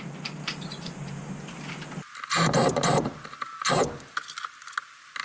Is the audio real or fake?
real